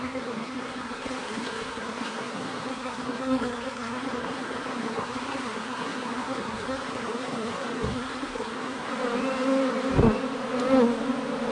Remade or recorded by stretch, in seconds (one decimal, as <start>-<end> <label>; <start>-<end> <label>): 0.0-8.9 remade; 8.9-11.5 recorded